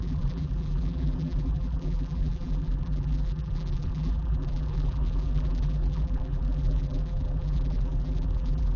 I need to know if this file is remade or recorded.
remade